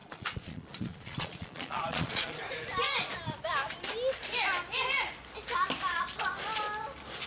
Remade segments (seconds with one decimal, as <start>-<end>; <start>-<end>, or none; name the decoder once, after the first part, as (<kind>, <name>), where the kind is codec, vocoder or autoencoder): 0.0-2.4 (vocoder, Vocos)